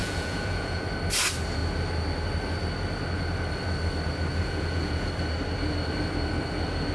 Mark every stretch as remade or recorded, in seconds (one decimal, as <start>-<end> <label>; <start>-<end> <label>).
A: 0.0-0.9 remade; 0.9-4.3 recorded; 4.3-5.1 remade; 5.1-6.9 recorded